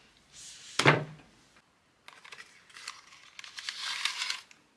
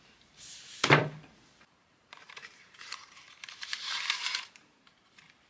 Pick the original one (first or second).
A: first